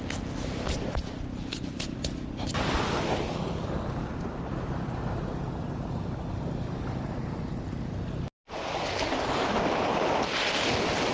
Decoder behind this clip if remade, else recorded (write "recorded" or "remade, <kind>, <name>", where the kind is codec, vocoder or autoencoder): recorded